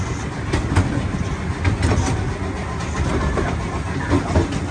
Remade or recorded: recorded